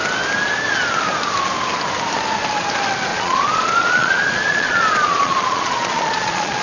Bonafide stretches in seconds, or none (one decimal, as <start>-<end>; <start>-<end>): 0.0-3.1